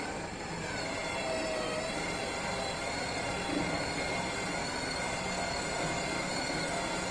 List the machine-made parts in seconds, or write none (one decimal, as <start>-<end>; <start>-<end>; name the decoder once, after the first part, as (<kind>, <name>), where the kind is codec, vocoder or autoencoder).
none